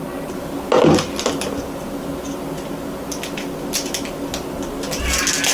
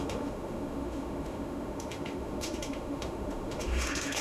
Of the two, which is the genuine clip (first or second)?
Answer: first